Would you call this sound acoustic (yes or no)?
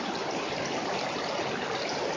yes